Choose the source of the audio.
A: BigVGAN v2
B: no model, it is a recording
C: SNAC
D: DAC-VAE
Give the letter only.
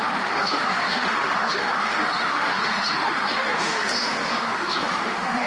D